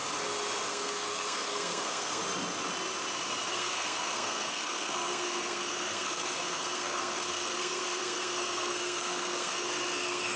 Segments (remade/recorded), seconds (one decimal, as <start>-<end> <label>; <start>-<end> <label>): 0.0-0.7 recorded; 0.7-2.2 remade; 2.2-3.5 recorded; 3.5-10.4 remade